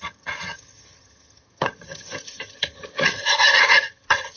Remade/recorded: remade